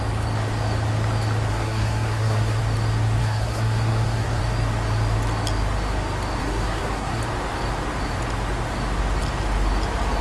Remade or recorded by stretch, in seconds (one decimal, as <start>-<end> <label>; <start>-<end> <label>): 0.0-1.5 recorded; 1.5-2.6 remade; 2.6-3.2 recorded; 3.2-4.4 remade; 4.4-6.4 recorded; 6.4-7.2 remade; 7.2-10.2 recorded